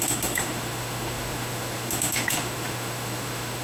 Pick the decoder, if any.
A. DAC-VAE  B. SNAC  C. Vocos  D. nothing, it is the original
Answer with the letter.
A